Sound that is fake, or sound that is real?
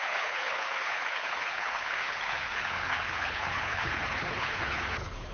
fake